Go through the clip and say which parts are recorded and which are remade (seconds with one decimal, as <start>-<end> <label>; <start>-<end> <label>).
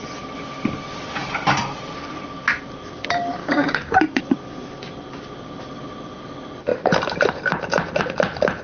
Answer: 0.0-3.4 recorded; 3.4-4.0 remade; 4.0-8.6 recorded